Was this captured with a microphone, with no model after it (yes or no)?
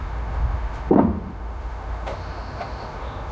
no